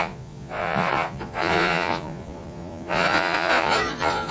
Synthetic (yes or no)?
yes